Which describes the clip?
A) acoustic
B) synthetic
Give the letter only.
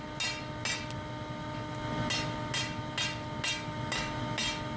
A